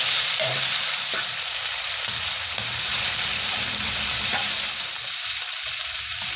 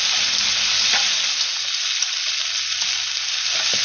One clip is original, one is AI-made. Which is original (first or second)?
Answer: second